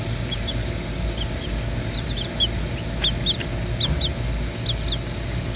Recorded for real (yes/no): yes